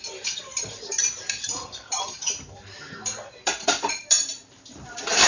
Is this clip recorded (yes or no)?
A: no